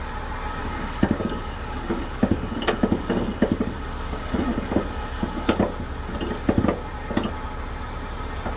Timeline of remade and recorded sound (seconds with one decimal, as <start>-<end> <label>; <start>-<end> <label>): 0.0-0.6 recorded; 0.6-5.6 remade; 5.6-8.6 recorded